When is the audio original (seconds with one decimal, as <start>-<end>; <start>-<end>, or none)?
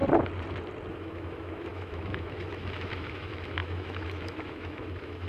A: 0.0-0.9